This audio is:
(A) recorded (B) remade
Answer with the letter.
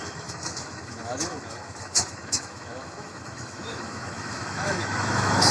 B